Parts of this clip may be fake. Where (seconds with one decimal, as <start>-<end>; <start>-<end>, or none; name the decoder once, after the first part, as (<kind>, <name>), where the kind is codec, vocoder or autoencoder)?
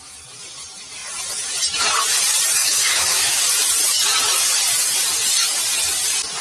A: 2.6-3.4 (autoencoder, DAC-VAE)